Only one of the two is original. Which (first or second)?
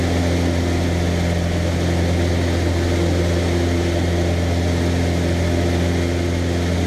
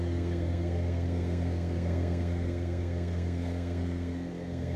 first